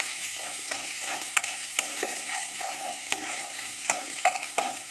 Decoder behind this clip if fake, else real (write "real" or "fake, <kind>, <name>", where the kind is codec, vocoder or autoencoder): fake, codec, SNAC